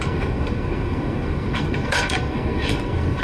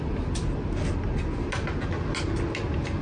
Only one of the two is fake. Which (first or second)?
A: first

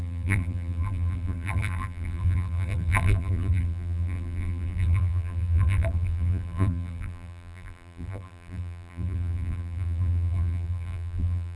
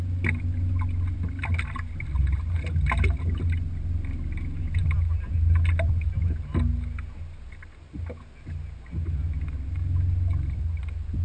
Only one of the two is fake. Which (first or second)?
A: first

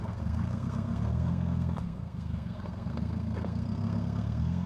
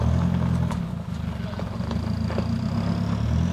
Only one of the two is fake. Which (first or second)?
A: first